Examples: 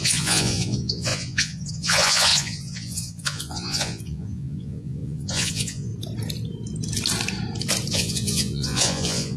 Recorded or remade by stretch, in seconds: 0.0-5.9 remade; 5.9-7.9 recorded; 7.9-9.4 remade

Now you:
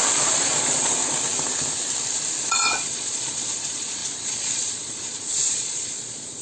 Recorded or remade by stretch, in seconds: 0.0-1.0 remade; 1.0-2.4 recorded; 2.4-6.4 remade

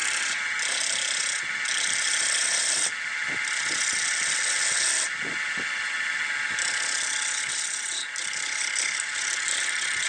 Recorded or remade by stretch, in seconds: 0.0-10.1 recorded